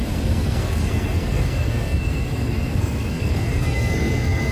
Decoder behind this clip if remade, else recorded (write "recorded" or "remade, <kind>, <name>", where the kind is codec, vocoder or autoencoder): remade, codec, SNAC